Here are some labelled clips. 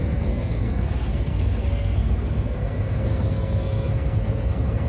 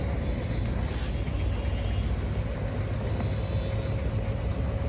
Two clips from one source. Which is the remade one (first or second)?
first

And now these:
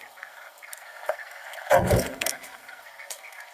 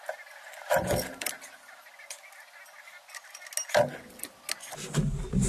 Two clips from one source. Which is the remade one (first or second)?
first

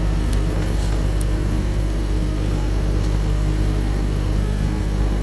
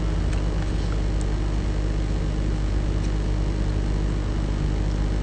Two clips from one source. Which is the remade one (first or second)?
first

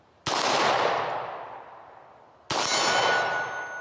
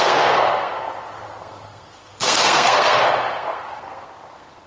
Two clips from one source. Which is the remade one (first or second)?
second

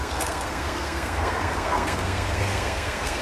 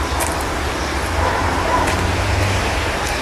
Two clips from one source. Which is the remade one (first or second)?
first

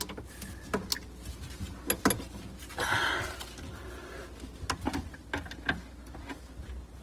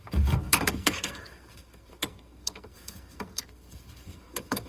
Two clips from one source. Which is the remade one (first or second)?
second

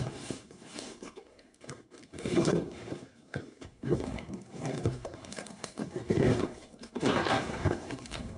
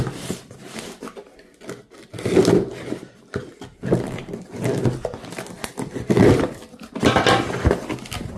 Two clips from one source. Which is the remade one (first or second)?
first